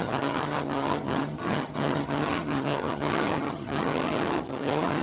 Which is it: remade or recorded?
remade